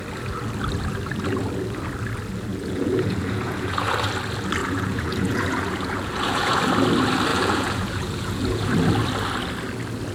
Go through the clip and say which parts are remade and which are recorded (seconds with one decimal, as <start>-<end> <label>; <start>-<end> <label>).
0.0-2.5 recorded; 2.5-3.9 remade; 3.9-4.6 recorded; 4.6-6.6 remade; 6.6-7.3 recorded; 7.3-8.7 remade; 8.7-10.1 recorded